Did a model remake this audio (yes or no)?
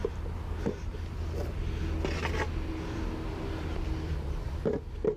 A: no